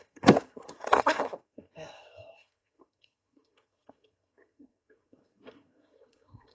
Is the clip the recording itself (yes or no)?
no